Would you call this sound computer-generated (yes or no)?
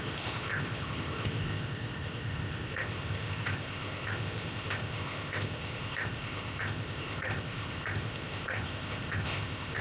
yes